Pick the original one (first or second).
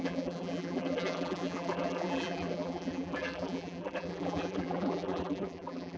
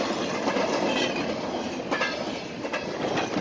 second